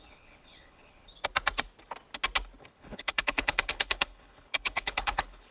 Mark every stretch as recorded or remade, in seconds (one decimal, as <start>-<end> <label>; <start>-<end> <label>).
0.0-1.1 remade; 1.1-2.7 recorded; 2.7-5.5 remade